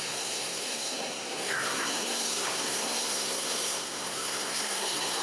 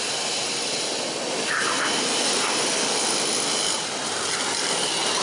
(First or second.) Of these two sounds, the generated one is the first